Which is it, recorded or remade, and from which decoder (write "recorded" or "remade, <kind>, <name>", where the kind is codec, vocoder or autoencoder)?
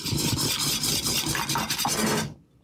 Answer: recorded